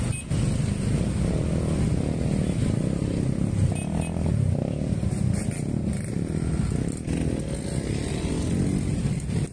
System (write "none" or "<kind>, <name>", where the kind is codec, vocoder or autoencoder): none